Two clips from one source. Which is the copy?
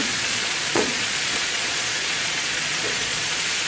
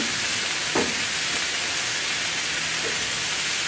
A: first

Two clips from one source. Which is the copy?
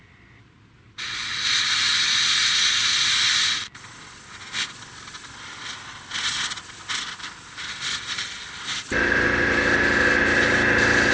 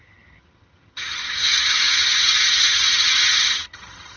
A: second